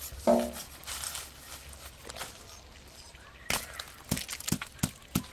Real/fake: real